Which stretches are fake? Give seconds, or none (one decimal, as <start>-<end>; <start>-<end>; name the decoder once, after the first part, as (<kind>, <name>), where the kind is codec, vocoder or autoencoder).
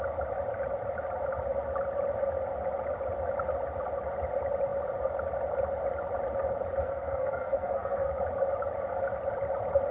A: 6.8-8.1 (codec, SNAC)